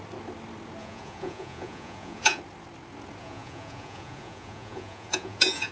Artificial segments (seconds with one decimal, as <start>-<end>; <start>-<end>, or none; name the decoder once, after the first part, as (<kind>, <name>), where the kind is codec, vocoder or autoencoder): 0.8-2.4 (vocoder, Vocos); 3.2-5.7